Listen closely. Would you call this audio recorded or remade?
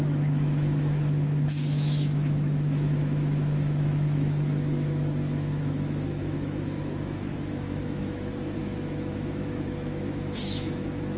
remade